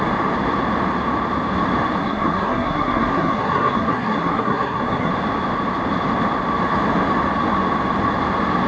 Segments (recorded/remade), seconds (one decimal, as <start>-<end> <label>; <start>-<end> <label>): 0.0-2.0 recorded; 2.0-5.1 remade; 5.1-8.7 recorded